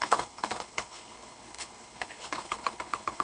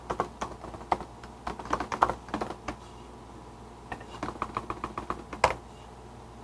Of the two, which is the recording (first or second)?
second